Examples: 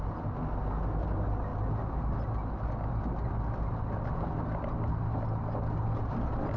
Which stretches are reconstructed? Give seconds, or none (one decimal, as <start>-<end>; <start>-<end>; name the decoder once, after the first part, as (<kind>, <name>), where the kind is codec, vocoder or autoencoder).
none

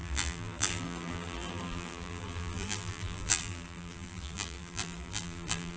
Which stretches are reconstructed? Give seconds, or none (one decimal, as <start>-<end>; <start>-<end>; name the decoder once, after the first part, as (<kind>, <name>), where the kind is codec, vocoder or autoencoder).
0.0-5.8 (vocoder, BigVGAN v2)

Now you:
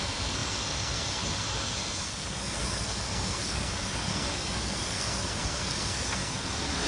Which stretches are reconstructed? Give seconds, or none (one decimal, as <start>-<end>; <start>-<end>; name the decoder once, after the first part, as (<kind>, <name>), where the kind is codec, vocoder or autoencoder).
0.0-6.9 (codec, SNAC)